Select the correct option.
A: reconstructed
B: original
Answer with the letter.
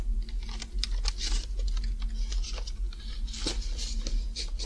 B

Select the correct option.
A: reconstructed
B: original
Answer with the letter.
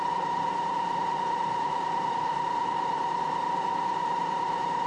A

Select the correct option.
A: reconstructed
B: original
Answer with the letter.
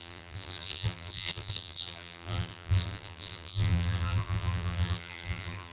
A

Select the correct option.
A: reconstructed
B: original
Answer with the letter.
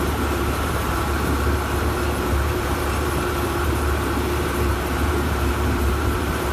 A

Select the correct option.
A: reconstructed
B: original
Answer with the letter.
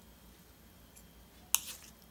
B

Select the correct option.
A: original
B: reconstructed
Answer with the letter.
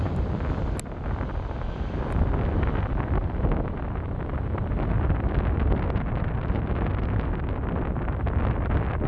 A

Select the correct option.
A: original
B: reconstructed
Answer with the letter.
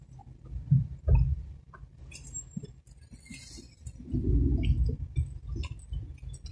A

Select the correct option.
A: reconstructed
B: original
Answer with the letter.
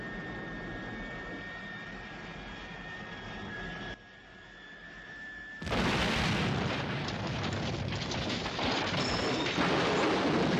B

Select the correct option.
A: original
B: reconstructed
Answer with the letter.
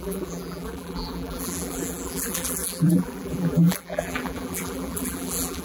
B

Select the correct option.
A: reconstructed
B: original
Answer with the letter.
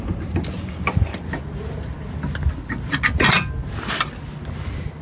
B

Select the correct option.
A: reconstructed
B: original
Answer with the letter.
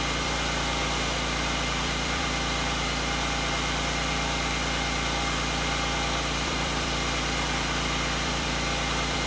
A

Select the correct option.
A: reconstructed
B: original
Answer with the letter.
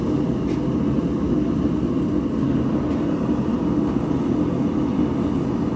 B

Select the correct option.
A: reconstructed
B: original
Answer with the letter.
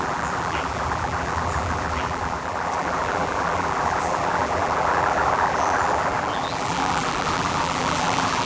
A